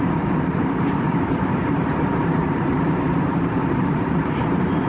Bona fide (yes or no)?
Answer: no